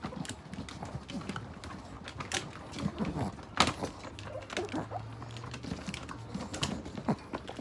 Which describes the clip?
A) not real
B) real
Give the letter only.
B